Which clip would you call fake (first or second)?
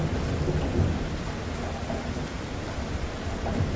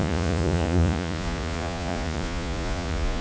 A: second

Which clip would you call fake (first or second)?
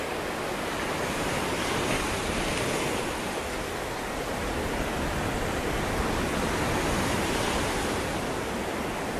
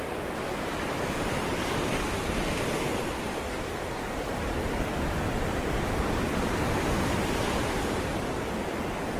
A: second